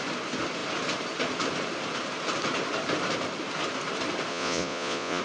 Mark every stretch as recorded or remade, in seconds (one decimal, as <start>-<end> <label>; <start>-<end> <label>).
0.0-4.3 recorded; 4.3-5.2 remade